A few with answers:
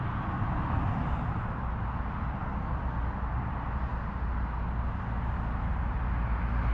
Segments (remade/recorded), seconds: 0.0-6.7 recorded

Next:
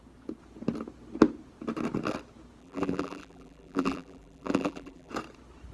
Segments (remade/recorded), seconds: 0.0-2.6 recorded; 2.6-5.1 remade; 5.1-5.7 recorded

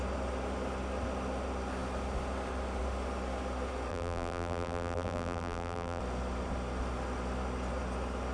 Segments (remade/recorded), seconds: 0.0-3.9 recorded; 3.9-6.0 remade; 6.0-8.3 recorded

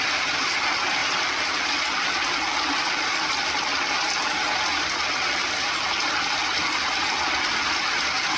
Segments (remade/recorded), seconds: 0.0-1.0 recorded; 1.0-1.5 remade; 1.5-8.4 recorded

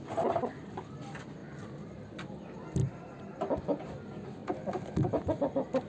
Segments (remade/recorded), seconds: 0.0-2.8 recorded; 2.8-3.4 remade; 3.4-5.9 recorded

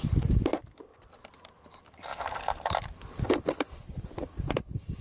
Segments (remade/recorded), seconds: 0.0-0.5 remade; 0.5-1.4 recorded; 1.4-5.0 remade

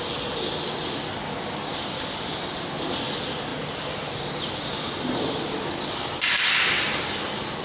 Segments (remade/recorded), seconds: 0.0-1.7 recorded; 1.7-2.3 remade; 2.3-7.6 recorded

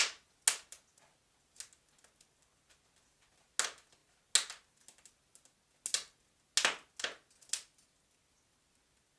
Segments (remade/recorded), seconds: 0.0-9.2 recorded